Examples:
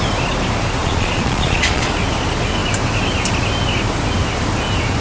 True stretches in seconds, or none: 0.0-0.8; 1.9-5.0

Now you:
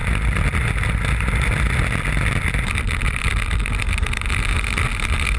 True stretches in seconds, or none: 0.0-5.4

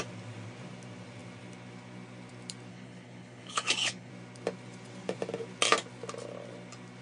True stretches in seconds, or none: 0.0-2.7; 4.1-7.0

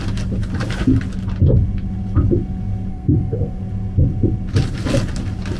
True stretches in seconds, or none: 0.0-2.9; 3.6-5.6